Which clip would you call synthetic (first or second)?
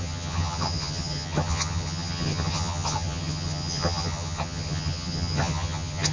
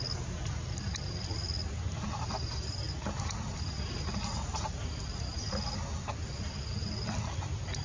first